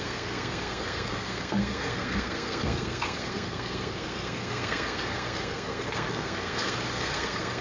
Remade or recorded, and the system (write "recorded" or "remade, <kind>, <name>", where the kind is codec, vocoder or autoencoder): remade, codec, SNAC